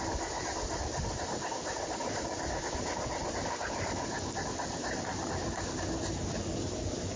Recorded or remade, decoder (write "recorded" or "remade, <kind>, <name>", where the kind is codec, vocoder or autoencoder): recorded